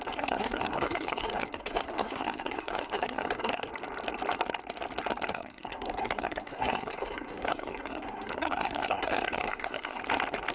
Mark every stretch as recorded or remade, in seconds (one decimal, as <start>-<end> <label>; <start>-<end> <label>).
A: 0.0-3.7 remade; 3.7-5.3 recorded; 5.3-10.0 remade; 10.0-10.5 recorded